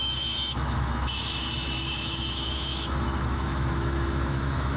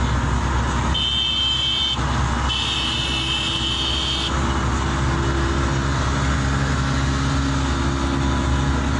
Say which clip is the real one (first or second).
second